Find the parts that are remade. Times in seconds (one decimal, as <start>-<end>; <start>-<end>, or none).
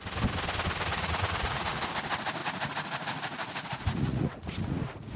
0.9-1.9; 2.4-5.2